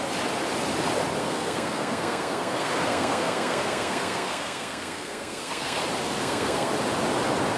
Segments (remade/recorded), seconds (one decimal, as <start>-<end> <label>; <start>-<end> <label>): 0.0-1.2 recorded; 1.2-5.8 remade; 5.8-6.2 recorded; 6.2-6.7 remade; 6.7-7.6 recorded